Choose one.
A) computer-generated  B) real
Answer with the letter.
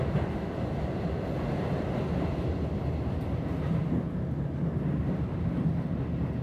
B